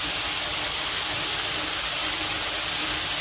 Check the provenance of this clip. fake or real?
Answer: real